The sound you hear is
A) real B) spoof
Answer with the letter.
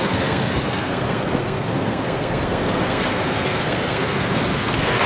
B